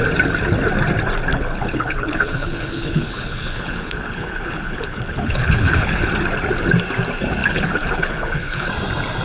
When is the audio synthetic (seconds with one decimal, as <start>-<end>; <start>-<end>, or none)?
1.3-6.1; 7.4-8.7

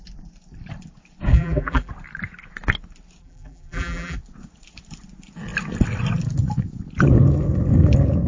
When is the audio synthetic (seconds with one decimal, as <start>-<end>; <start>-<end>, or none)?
1.3-1.9; 3.2-4.2

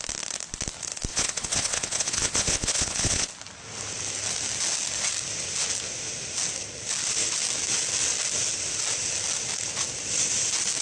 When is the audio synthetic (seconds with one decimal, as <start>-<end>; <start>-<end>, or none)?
1.1-3.3